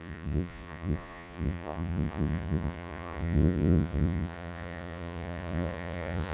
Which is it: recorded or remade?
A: remade